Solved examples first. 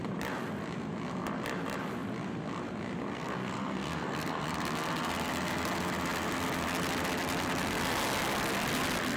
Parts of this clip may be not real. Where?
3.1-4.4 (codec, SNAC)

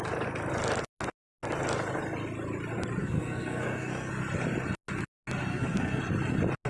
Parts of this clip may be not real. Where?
3.0-4.1 (codec, SNAC); 5.5-6.0

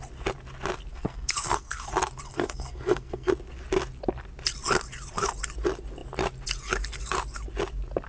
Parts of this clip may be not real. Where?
0.9-1.9 (codec, SNAC); 2.3-3.3

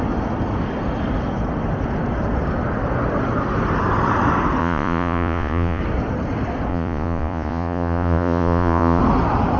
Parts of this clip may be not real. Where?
4.6-5.8 (vocoder, Vocos); 6.7-9.0

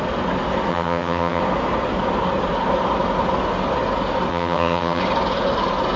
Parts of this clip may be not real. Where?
0.7-1.4 (vocoder, HiFi-GAN); 4.3-5.0

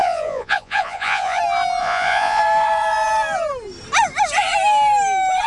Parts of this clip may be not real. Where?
0.0-1.4 (vocoder, Vocos); 1.8-2.4